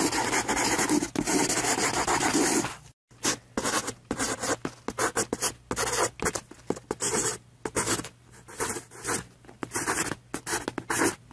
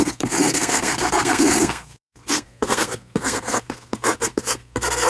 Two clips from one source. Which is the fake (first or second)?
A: second